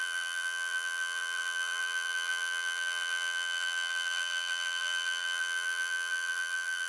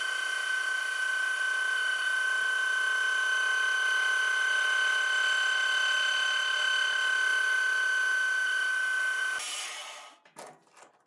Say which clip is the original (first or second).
second